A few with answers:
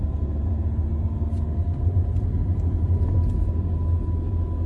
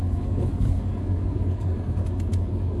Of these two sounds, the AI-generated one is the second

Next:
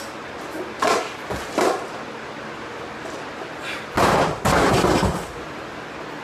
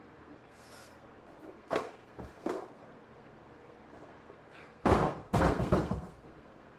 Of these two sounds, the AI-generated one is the second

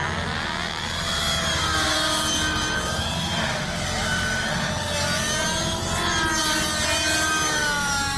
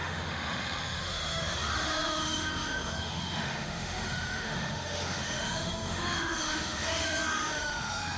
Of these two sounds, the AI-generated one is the second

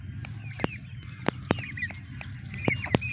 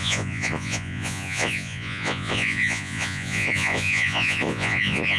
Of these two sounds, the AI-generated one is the second